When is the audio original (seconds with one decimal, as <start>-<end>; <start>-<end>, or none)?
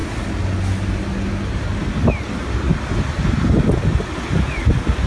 0.0-5.1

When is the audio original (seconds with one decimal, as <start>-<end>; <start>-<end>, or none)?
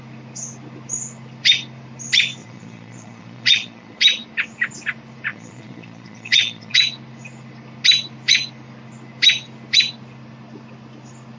0.0-2.4; 4.0-5.3; 6.8-11.4